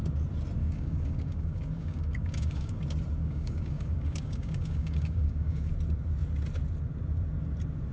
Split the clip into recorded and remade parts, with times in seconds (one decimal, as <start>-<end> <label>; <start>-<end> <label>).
0.0-0.6 recorded; 0.6-2.8 remade; 2.8-3.2 recorded; 3.2-5.7 remade; 5.7-7.9 recorded